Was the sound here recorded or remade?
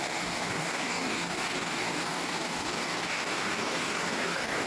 remade